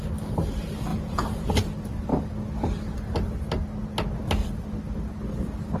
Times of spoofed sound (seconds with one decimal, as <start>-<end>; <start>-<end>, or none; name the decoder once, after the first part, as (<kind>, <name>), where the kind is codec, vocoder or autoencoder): 0.9-1.5 (vocoder, Vocos)